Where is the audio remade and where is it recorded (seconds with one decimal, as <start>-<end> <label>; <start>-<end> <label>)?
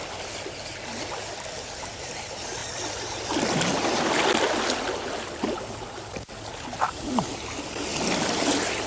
0.0-8.9 recorded